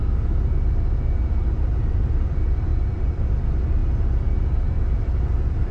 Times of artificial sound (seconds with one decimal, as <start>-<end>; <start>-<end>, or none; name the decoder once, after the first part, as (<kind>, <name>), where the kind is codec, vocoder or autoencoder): 1.6-3.8 (vocoder, BigVGAN v2); 4.7-5.7